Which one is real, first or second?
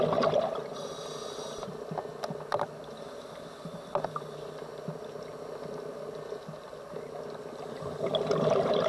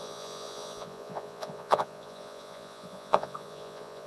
first